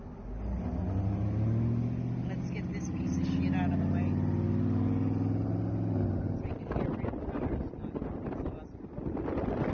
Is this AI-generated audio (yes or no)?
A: no